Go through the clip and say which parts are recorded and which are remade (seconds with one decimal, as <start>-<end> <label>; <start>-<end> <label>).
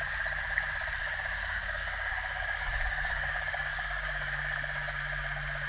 0.0-1.0 recorded; 1.0-4.4 remade; 4.4-5.7 recorded